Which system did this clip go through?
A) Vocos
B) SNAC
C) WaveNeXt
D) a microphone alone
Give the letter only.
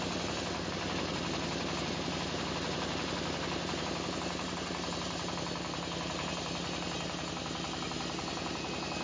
D